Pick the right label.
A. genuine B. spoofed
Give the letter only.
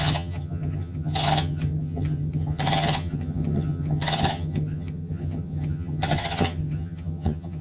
B